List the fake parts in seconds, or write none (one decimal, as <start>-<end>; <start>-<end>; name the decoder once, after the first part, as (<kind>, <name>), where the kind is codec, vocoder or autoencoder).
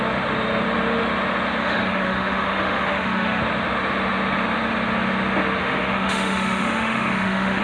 1.6-3.4 (autoencoder, DAC-VAE); 5.6-7.6